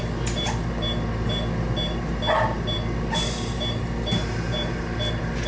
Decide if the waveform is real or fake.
real